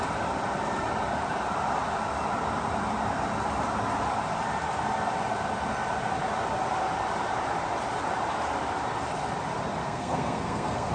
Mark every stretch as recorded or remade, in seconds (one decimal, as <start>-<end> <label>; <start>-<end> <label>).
0.0-9.8 recorded; 9.8-10.9 remade

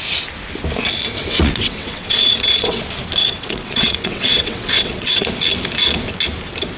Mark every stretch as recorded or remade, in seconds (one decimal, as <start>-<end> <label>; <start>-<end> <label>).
0.0-1.2 recorded; 1.2-2.8 remade; 2.8-3.2 recorded; 3.2-5.3 remade; 5.3-6.8 recorded

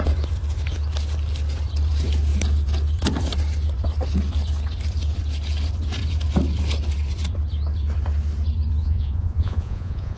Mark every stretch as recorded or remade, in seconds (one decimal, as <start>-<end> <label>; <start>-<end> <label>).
0.0-8.8 recorded; 8.8-10.2 remade

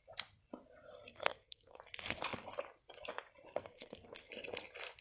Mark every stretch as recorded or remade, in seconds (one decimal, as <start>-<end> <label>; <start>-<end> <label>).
0.0-1.1 recorded; 1.1-1.8 remade; 1.8-3.5 recorded; 3.5-4.3 remade; 4.3-5.0 recorded

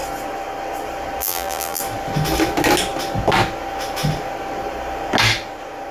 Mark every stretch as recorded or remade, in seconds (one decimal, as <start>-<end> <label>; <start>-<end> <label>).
0.0-1.2 recorded; 1.2-1.8 remade; 1.8-5.9 recorded

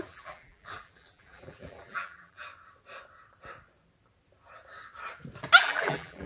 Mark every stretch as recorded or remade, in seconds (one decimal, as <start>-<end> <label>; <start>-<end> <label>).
0.0-2.5 remade; 2.5-5.6 recorded; 5.6-6.3 remade

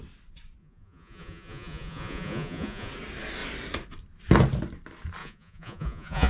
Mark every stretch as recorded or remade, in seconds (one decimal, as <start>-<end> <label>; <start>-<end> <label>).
0.0-0.6 recorded; 0.6-2.9 remade; 2.9-5.2 recorded; 5.2-6.3 remade

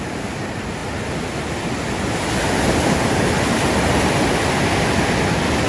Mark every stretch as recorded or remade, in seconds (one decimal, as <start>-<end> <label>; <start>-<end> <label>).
0.0-5.7 recorded